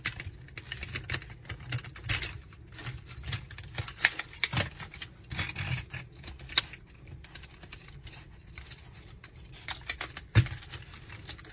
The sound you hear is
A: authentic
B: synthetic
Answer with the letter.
A